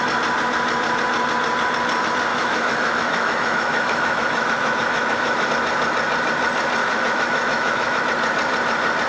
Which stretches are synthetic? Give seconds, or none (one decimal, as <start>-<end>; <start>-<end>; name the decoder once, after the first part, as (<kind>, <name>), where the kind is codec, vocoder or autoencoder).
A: 2.3-5.5 (autoencoder, DAC-VAE); 6.8-8.0